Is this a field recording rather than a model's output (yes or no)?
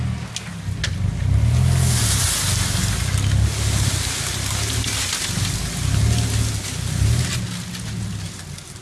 yes